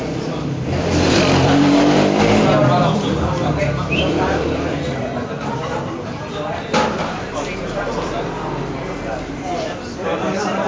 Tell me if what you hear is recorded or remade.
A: remade